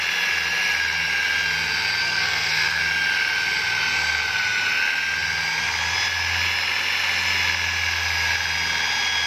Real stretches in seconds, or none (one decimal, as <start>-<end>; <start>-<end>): 0.0-2.0; 2.8-9.3